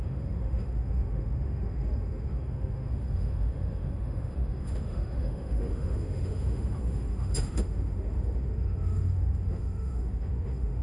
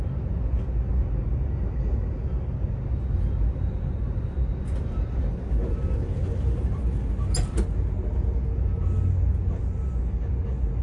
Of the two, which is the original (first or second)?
second